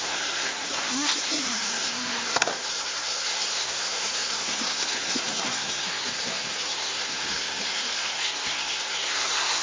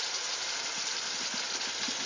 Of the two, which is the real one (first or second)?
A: second